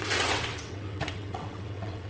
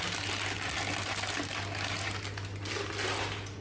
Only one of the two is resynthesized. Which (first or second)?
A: first